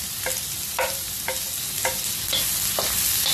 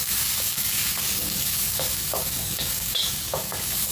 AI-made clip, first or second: second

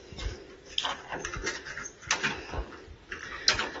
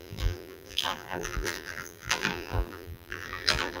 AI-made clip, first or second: second